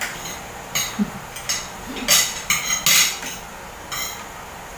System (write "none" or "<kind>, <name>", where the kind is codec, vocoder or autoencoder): none